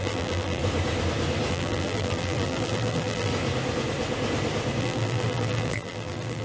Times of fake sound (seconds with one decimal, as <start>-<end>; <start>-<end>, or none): 0.0-0.6; 1.5-3.3; 4.8-6.4